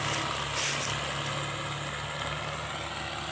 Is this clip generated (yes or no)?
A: no